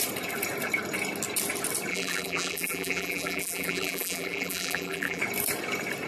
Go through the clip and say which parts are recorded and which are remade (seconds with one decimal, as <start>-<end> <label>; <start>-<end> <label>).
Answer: 0.0-1.9 recorded; 1.9-5.2 remade; 5.2-6.1 recorded